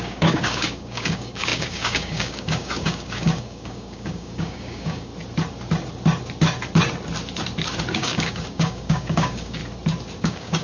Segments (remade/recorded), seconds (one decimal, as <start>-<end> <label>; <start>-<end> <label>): 0.0-5.1 remade; 5.1-7.9 recorded; 7.9-9.6 remade; 9.6-10.2 recorded; 10.2-10.6 remade